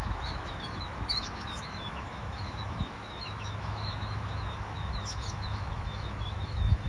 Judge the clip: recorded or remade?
remade